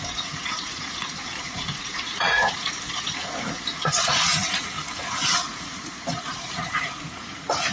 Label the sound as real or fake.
fake